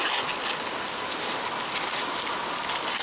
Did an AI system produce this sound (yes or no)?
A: no